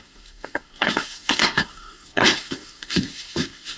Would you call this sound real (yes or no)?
no